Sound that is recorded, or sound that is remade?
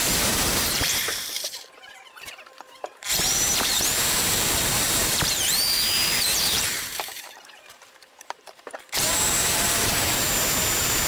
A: remade